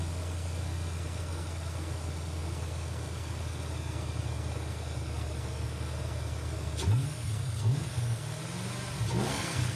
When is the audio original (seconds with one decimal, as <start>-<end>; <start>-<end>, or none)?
8.4-9.1